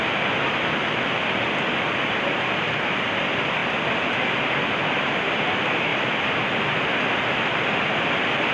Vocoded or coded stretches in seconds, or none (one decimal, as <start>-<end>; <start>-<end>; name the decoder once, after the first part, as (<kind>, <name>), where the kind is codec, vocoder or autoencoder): 0.0-3.6 (vocoder, BigVGAN v2); 4.8-5.9; 6.8-8.5